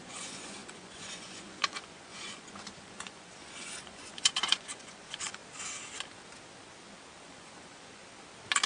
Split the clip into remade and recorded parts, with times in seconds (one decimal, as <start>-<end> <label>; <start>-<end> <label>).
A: 0.0-5.4 remade; 5.4-7.2 recorded; 7.2-8.0 remade; 8.0-8.7 recorded